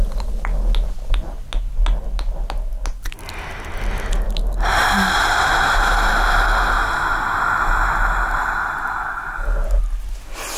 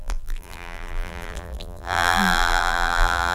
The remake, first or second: second